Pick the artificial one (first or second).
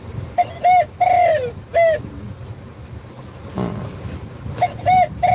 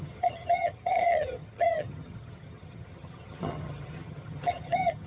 second